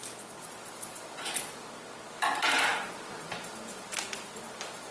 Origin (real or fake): real